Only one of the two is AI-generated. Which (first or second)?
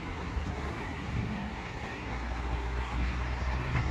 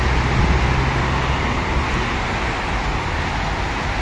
first